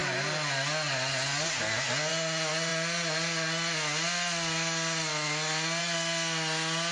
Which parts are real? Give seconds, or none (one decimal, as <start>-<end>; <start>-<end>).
0.0-6.9